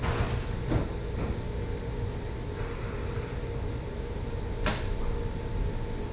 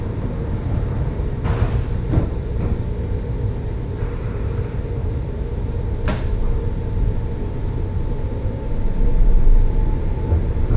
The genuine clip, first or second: first